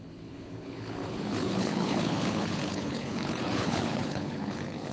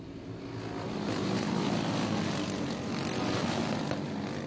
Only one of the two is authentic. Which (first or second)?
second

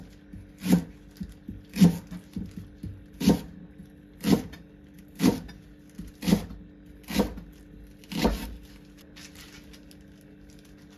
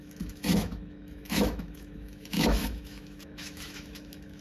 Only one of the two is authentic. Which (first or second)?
first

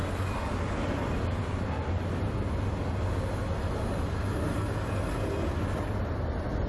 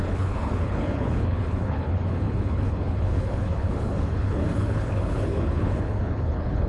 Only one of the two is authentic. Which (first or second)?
first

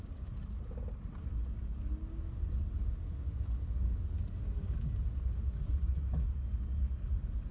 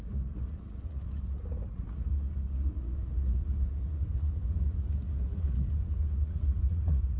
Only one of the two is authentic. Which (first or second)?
first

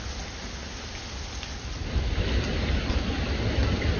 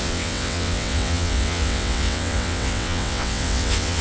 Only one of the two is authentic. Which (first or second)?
first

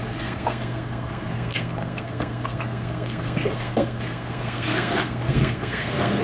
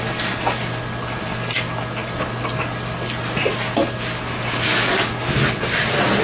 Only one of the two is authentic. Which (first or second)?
second